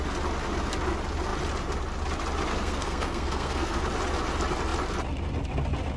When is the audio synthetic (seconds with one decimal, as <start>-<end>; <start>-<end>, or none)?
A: 2.5-3.8